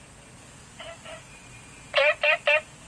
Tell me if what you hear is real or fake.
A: real